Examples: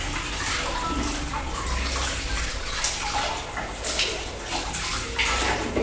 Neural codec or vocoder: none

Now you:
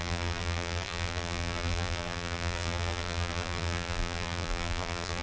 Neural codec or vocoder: vocoder, BigVGAN v2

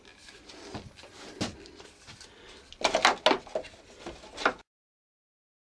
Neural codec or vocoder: none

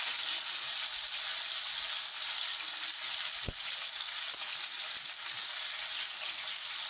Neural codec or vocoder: none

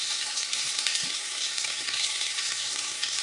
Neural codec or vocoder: codec, SNAC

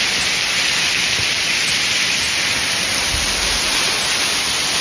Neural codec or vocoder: none